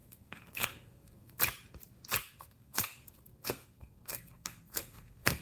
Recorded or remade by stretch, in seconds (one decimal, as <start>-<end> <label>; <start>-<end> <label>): 0.0-1.4 remade; 1.4-2.2 recorded; 2.2-5.4 remade